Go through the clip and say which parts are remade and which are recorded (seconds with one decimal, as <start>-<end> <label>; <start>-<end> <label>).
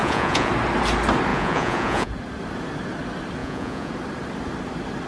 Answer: 0.0-0.5 remade; 0.5-1.3 recorded; 1.3-2.1 remade; 2.1-3.4 recorded; 3.4-3.9 remade; 3.9-5.1 recorded